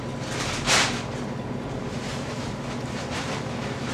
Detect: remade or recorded recorded